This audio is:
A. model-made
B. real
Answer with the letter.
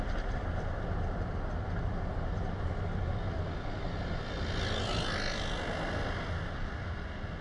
B